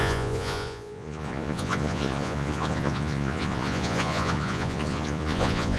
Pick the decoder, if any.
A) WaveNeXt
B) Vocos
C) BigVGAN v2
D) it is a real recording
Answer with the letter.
B